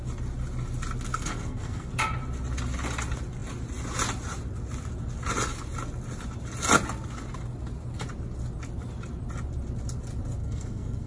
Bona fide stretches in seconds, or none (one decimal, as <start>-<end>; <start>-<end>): 0.0-1.1; 1.9-10.4